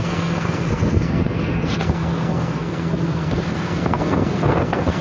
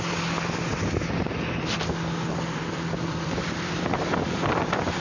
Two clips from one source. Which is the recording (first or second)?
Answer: second